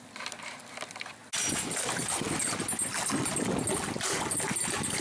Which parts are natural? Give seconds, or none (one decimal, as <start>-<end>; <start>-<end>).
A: 0.0-5.0